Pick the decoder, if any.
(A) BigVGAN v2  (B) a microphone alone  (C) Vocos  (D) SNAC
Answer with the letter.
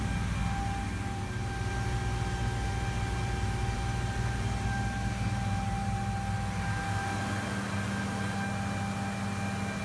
B